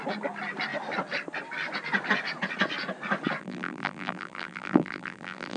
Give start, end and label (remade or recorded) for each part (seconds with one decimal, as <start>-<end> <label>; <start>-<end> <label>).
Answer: 0.0-3.4 recorded; 3.4-5.6 remade